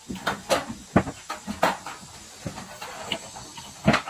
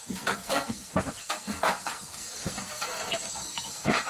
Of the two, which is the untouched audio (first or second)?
first